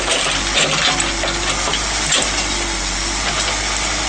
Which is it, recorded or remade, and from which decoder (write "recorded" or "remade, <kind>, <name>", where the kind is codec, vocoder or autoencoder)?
recorded